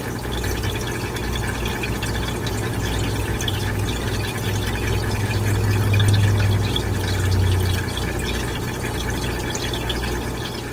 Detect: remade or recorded recorded